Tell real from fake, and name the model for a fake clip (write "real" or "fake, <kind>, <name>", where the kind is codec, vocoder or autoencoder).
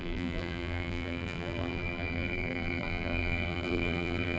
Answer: fake, vocoder, BigVGAN v2